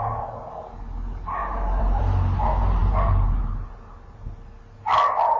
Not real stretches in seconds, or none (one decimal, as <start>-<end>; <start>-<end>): 1.4-2.0